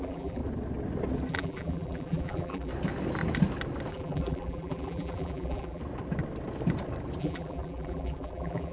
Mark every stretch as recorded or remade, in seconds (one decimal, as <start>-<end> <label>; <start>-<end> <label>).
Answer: 0.0-0.4 remade; 0.4-1.3 recorded; 1.3-2.7 remade; 2.7-3.9 recorded; 3.9-5.8 remade; 5.8-7.2 recorded; 7.2-8.7 remade